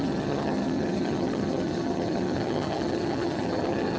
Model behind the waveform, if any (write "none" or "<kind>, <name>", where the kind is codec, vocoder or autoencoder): vocoder, HiFi-GAN